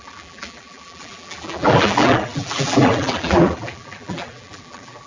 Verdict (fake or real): fake